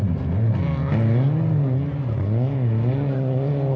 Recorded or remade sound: recorded